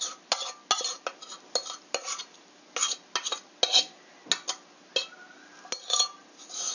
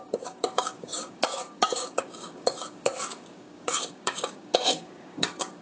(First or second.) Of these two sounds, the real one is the first